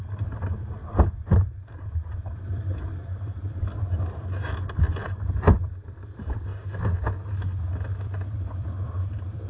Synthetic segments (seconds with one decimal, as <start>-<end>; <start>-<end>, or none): 0.0-6.5; 7.6-9.5